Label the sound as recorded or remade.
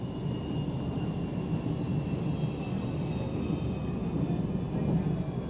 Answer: recorded